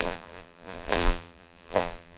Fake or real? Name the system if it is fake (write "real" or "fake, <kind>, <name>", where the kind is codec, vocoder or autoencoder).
fake, vocoder, BigVGAN v2